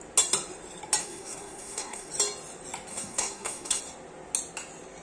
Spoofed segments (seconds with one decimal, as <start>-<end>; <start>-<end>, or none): 1.0-2.1; 2.9-3.8